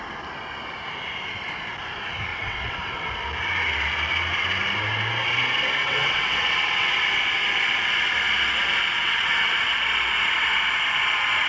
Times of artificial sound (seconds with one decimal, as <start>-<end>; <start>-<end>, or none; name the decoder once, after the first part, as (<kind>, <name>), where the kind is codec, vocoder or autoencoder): 2.3-3.1 (vocoder, WaveNeXt); 5.8-6.9; 9.0-9.5

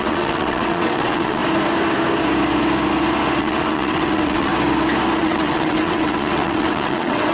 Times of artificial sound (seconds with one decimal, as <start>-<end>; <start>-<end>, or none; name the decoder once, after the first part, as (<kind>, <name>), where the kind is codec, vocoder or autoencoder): 0.0-1.4 (vocoder, WaveNeXt); 3.4-4.5; 5.2-7.3

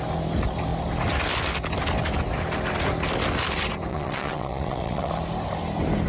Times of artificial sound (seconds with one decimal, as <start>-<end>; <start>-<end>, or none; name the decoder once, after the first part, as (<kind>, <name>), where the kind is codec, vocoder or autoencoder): 3.9-5.1 (vocoder, WaveNeXt)

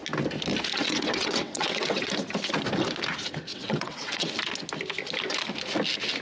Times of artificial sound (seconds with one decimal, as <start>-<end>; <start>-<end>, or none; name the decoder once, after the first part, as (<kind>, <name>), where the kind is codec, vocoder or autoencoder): 0.7-2.1 (vocoder, WaveNeXt); 3.5-4.3

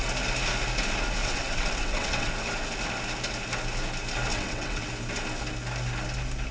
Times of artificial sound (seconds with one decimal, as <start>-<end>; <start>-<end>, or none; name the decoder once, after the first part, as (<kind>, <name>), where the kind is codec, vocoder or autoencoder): 1.2-2.3 (vocoder, WaveNeXt); 4.3-4.9